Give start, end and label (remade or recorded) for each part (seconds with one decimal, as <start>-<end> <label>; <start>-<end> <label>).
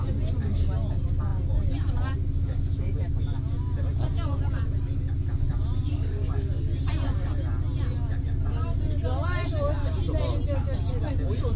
0.0-5.8 recorded; 5.8-6.5 remade; 6.5-11.6 recorded